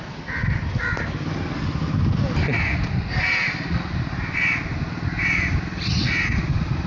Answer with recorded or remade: recorded